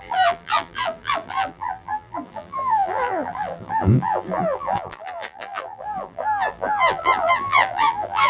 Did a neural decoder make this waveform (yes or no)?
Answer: yes